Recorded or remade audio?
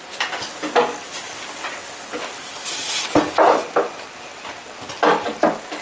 recorded